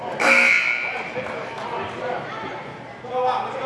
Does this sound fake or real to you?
real